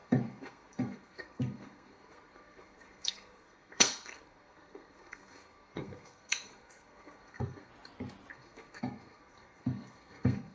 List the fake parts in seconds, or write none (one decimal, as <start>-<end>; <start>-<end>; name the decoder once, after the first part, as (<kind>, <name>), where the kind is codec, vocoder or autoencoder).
0.0-7.7 (codec, SNAC); 8.3-10.5